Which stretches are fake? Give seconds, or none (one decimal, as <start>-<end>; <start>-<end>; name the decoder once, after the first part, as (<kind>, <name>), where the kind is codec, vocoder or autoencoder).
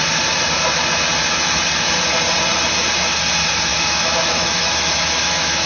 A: 3.7-5.7 (autoencoder, DAC-VAE)